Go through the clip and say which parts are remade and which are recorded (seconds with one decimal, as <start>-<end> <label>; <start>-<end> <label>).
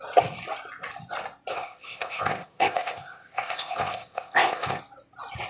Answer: 0.0-1.5 recorded; 1.5-4.8 remade; 4.8-5.5 recorded